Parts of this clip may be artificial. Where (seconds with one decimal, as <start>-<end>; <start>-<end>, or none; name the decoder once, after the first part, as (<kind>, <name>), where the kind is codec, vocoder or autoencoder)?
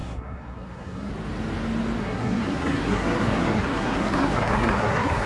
0.0-1.1 (codec, SNAC); 2.0-5.3